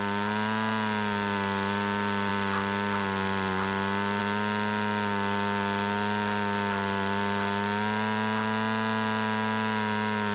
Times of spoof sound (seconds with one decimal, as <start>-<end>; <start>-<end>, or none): none